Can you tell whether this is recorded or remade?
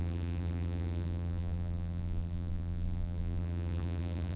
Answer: remade